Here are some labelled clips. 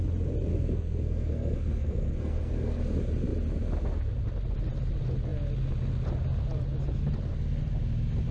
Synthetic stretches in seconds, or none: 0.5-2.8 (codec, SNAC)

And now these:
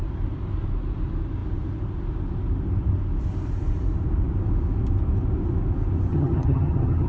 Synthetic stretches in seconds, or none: 6.1-7.1 (vocoder, HiFi-GAN)

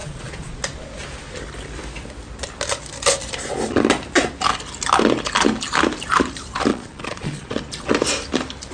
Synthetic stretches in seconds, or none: 0.0-0.6 (vocoder, Vocos); 6.7-7.5

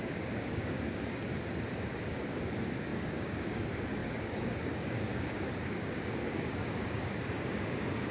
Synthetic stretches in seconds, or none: 0.0-1.3 (codec, DAC); 2.0-8.1

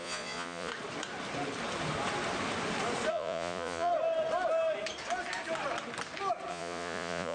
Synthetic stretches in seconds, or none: 0.0-0.7 (vocoder, Vocos); 3.1-3.9; 6.5-7.3

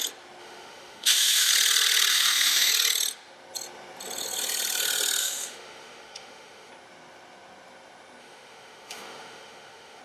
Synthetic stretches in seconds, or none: 0.4-1.5 (autoencoder, DAC-VAE); 2.1-2.7; 5.2-6.7; 8.2-10.0

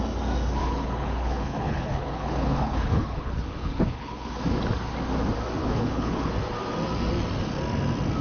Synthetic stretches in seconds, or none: 0.6-4.4 (codec, HILCodec); 5.6-6.3

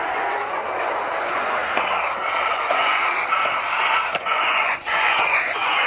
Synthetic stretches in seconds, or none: 0.0-0.6 (vocoder, Vocos); 1.2-1.6; 2.5-3.0; 4.2-5.9